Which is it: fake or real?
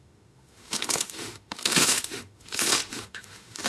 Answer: fake